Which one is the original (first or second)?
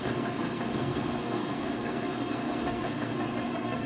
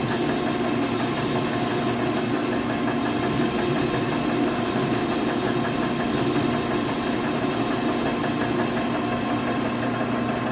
second